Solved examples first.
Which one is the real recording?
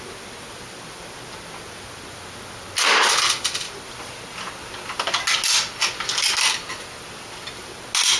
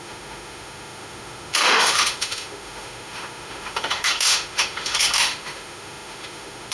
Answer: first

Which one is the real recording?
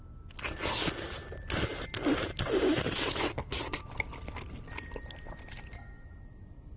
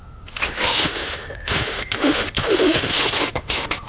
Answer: first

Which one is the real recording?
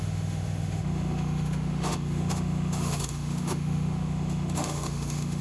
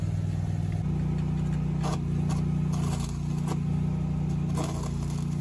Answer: second